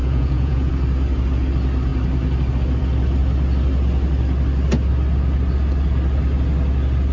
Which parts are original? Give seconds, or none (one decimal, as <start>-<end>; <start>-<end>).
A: 0.7-7.1